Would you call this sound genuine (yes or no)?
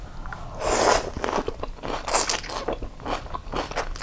yes